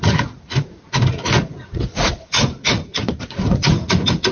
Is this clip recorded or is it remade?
remade